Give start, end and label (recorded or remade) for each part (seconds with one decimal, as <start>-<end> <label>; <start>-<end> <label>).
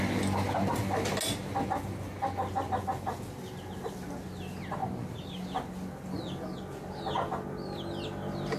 0.0-8.6 recorded